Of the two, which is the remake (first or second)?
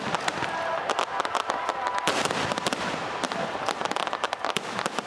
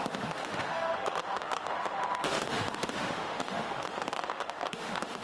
second